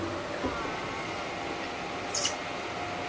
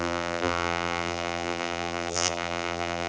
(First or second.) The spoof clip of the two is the second